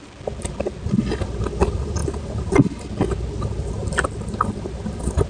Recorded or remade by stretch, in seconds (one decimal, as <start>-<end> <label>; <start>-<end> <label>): 0.0-5.3 recorded